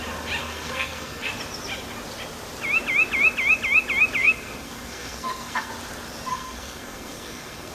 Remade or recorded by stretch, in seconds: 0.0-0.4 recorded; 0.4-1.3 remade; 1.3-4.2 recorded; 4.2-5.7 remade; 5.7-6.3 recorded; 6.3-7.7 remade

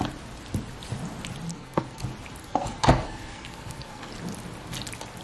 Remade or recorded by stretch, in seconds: 0.0-1.5 recorded; 1.5-2.0 remade; 2.0-2.4 recorded; 2.4-4.1 remade; 4.1-5.2 recorded

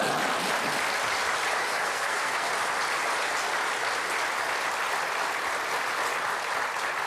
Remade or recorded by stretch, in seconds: 0.0-1.6 recorded; 1.6-2.5 remade; 2.5-7.1 recorded

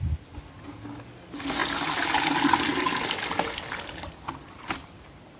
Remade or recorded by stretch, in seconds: 0.0-5.4 recorded

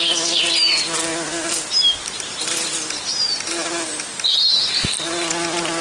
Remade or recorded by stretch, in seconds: 0.0-5.8 recorded

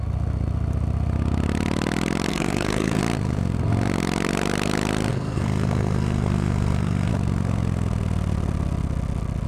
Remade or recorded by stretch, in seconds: 0.0-2.3 recorded; 2.3-3.0 remade; 3.0-5.1 recorded; 5.1-7.1 remade; 7.1-9.5 recorded

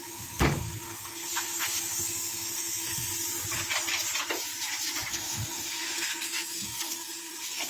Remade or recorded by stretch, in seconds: 0.0-3.1 remade; 3.1-5.1 recorded; 5.1-7.7 remade

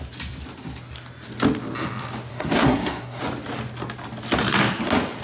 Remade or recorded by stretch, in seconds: 0.0-2.3 recorded; 2.3-3.2 remade; 3.2-5.2 recorded